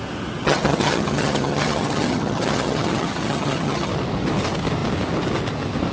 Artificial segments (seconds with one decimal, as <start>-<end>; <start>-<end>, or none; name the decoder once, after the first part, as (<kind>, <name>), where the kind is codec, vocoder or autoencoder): 0.4-3.9 (vocoder, HiFi-GAN)